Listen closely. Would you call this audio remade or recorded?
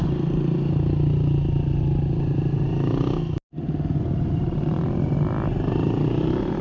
recorded